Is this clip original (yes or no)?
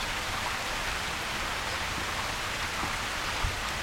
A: yes